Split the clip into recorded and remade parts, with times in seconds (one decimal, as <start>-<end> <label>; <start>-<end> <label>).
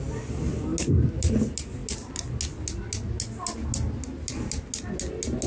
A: 0.0-5.5 recorded